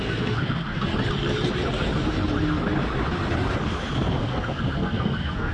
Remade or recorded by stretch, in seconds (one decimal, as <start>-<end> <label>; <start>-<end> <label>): 0.0-0.9 remade; 0.9-4.2 recorded; 4.2-5.5 remade